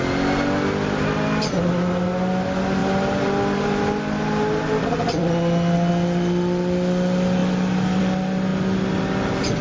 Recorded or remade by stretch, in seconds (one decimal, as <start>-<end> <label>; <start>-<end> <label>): 0.0-9.6 recorded